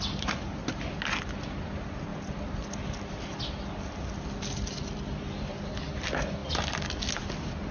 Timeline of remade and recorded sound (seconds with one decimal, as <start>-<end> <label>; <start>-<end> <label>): 0.0-7.7 recorded